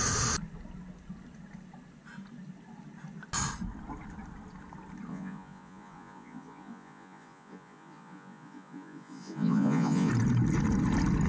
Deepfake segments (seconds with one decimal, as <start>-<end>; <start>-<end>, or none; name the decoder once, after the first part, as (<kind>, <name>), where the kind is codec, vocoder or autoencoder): 5.1-10.1 (vocoder, Vocos)